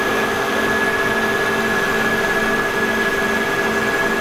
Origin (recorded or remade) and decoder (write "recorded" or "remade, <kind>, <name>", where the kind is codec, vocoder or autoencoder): recorded